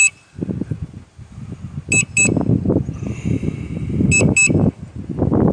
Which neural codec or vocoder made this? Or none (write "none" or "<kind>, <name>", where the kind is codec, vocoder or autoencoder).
none